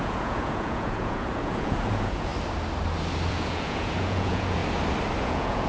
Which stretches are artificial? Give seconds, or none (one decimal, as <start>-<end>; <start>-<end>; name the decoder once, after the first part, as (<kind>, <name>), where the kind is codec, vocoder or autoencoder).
0.0-2.3 (vocoder, Vocos); 3.3-4.6; 5.2-5.7